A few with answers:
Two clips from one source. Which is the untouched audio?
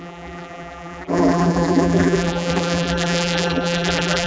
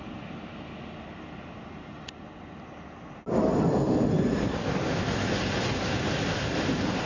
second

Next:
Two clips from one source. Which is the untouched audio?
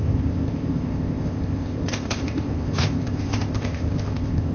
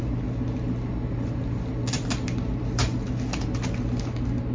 second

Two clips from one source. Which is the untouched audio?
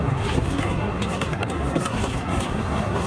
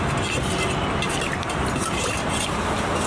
second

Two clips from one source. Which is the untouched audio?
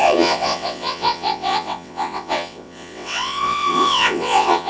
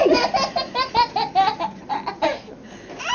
second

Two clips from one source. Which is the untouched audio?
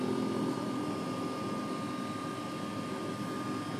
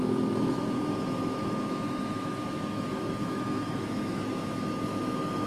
first